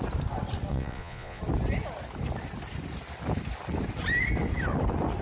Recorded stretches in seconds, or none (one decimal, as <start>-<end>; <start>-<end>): 0.0-0.7; 1.4-5.2